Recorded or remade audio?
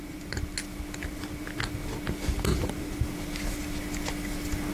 recorded